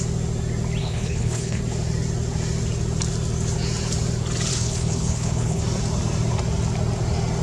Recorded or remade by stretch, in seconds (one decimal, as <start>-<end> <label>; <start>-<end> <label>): 0.0-0.8 recorded; 0.8-1.6 remade; 1.6-4.5 recorded; 4.5-5.6 remade; 5.6-7.4 recorded